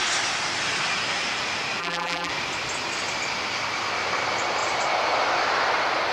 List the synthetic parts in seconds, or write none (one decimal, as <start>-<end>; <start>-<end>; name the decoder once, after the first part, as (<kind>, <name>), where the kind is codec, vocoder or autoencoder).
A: 1.8-2.3 (vocoder, BigVGAN v2)